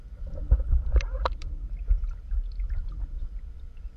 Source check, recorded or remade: remade